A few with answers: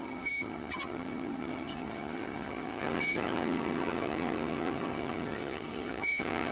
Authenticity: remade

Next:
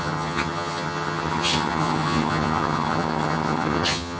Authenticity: remade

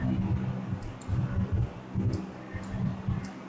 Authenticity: recorded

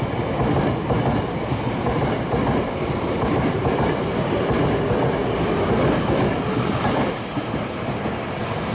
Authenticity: recorded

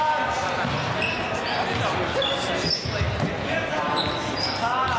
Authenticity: recorded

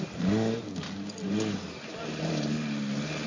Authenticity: recorded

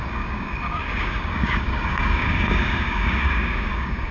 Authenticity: remade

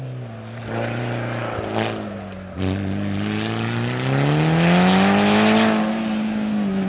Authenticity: recorded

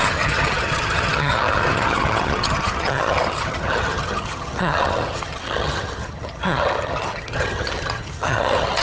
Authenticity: remade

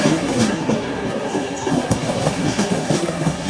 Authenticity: remade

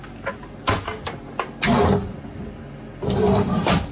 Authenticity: recorded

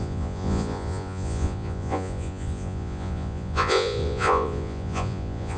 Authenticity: remade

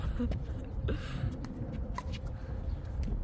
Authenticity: recorded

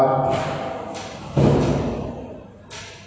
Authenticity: recorded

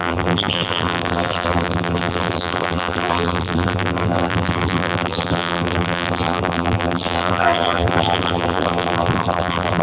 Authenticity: remade